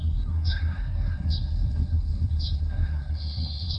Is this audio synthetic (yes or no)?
yes